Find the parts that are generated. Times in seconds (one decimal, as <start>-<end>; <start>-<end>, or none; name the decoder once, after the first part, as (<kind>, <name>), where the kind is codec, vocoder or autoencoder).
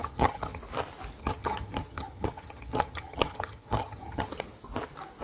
0.0-0.6 (vocoder, HiFi-GAN); 1.2-4.3